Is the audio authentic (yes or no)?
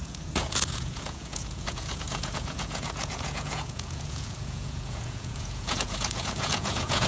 no